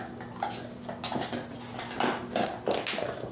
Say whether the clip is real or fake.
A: real